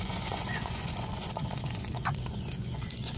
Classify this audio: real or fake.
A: fake